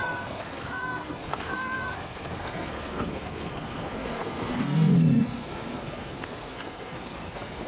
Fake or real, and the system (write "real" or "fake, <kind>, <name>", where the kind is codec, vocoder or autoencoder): fake, codec, SNAC